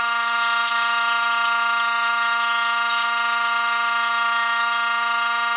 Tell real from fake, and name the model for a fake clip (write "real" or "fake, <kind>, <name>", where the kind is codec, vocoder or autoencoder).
real